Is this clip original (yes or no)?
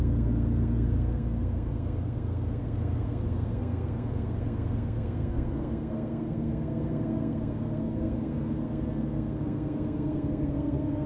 no